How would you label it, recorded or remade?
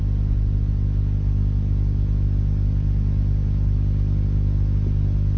recorded